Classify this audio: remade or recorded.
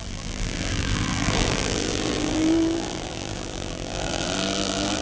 remade